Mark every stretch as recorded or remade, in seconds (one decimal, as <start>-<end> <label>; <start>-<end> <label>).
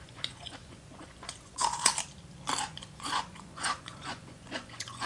0.0-1.9 remade; 1.9-2.6 recorded; 2.6-5.1 remade